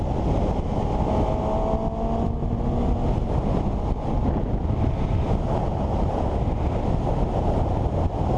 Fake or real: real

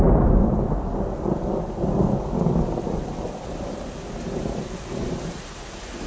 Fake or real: real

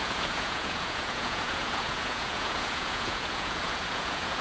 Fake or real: fake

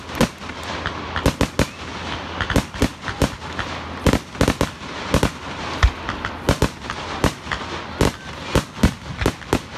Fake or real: real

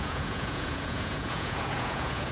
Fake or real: fake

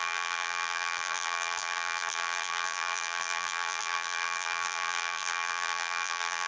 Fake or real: fake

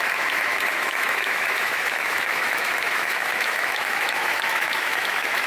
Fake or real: fake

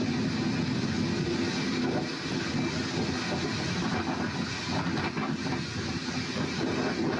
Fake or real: real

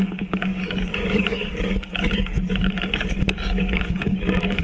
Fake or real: fake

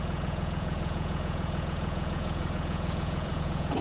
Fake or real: fake